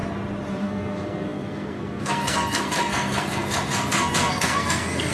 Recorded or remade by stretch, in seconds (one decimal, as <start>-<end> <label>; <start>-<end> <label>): 0.0-0.5 recorded; 0.5-5.1 remade